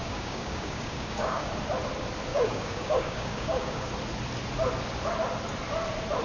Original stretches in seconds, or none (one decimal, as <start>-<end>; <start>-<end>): 1.5-2.3; 3.9-6.2